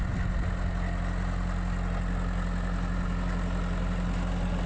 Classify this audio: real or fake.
real